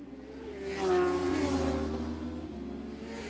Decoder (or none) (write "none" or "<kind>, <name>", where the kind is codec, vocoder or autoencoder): none